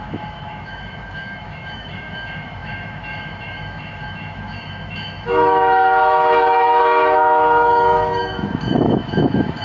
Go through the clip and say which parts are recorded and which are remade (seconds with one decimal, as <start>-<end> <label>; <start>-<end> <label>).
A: 0.0-9.6 remade